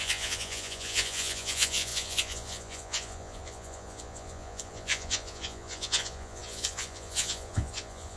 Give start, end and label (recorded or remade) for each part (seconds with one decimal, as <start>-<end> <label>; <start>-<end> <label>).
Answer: 0.0-8.2 remade